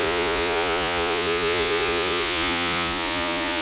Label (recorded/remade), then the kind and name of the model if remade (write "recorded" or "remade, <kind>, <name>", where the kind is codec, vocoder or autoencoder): remade, vocoder, Vocos